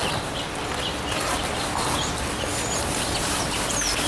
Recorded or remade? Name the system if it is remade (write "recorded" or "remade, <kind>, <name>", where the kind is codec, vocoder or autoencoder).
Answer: recorded